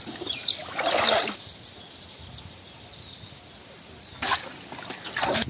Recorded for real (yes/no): yes